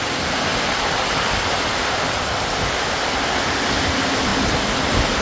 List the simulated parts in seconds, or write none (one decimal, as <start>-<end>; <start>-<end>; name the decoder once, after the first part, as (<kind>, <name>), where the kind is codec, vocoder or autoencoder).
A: none